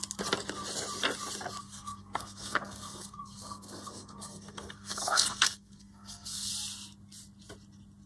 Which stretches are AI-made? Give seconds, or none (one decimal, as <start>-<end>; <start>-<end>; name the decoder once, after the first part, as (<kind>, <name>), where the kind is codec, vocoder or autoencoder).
1.6-6.5 (codec, SNAC)